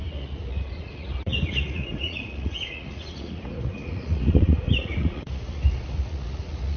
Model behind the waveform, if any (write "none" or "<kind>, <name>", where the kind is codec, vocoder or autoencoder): vocoder, Vocos